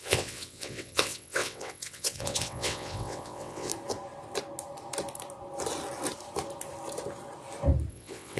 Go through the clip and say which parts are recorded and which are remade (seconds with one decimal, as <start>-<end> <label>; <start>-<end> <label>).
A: 0.0-3.7 remade; 3.7-7.9 recorded; 7.9-8.4 remade